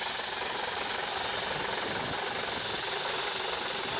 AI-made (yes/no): no